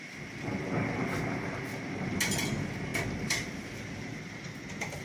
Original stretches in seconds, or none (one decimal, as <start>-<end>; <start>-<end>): 0.0-5.0